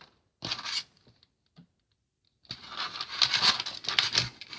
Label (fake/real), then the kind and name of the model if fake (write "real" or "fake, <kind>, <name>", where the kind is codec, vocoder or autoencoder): real